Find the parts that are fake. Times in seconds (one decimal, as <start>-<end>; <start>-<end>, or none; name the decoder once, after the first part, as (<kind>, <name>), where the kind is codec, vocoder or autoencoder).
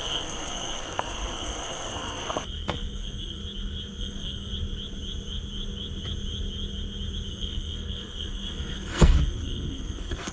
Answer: 0.0-3.4 (codec, SNAC); 4.0-4.5; 7.3-10.3